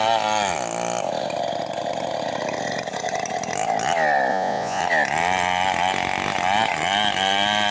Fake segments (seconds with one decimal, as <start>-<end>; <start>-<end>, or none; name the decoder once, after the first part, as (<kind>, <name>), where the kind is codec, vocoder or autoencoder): 4.3-4.8 (vocoder, Vocos)